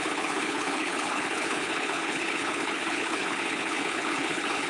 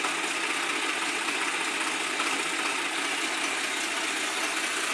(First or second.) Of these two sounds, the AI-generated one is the first